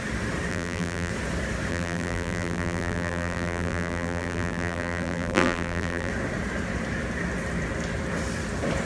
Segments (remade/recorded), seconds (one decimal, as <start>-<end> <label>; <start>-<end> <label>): 0.0-0.5 recorded; 0.5-1.1 remade; 1.1-1.7 recorded; 1.7-6.1 remade; 6.1-8.8 recorded